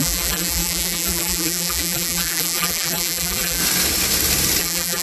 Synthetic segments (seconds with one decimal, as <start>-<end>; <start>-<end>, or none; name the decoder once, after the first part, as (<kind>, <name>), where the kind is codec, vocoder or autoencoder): 0.0-3.6 (vocoder, BigVGAN v2); 4.6-5.0